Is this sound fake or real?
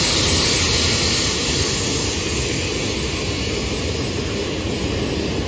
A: real